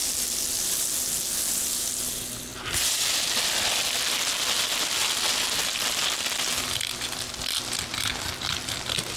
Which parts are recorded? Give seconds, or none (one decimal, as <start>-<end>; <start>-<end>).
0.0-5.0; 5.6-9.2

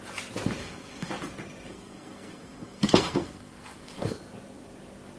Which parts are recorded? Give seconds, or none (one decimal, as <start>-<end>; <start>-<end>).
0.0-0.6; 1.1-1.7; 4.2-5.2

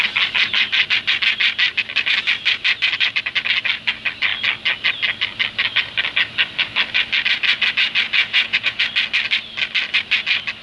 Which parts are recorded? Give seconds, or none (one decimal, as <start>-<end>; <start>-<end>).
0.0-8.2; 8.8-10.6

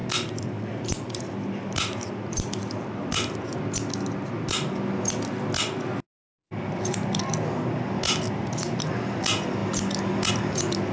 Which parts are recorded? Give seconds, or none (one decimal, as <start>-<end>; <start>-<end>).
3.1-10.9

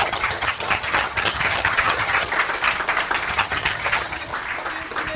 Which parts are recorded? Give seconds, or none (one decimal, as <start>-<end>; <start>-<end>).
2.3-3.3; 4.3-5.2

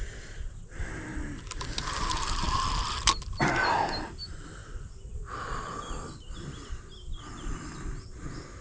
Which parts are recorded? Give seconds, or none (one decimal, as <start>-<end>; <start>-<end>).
0.0-8.6